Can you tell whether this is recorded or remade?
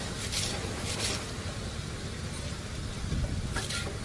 recorded